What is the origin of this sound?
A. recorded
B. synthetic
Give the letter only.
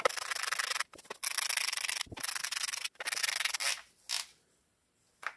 A